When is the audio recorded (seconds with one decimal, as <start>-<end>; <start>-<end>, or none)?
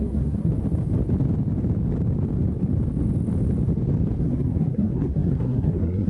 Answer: 0.5-4.2